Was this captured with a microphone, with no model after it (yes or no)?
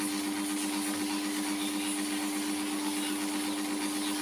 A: yes